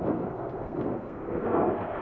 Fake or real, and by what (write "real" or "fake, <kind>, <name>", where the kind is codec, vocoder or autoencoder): fake, codec, SNAC